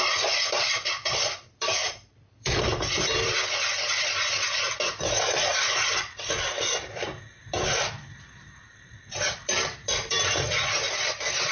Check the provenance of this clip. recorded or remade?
remade